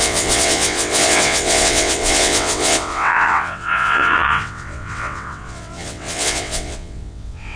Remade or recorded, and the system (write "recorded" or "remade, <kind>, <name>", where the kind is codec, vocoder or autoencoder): remade, vocoder, WaveNeXt